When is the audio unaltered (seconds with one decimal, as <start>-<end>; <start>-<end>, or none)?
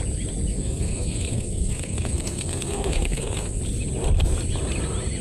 0.0-0.5; 3.6-5.2